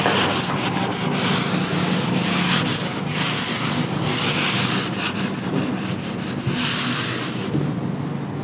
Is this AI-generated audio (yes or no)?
no